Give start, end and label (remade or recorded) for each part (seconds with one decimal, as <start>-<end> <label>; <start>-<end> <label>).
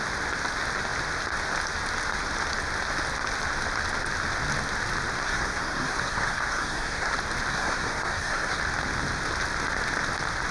0.0-5.2 recorded; 5.2-7.1 remade; 7.1-7.5 recorded; 7.5-8.6 remade; 8.6-10.5 recorded